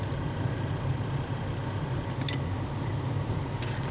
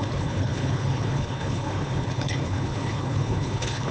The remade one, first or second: second